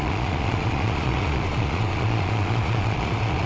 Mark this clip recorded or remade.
remade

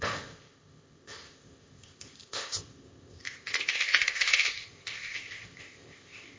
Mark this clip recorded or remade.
remade